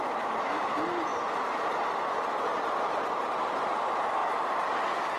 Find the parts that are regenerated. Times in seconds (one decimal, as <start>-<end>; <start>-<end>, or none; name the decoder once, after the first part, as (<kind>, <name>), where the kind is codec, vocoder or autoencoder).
2.5-3.3 (vocoder, BigVGAN v2)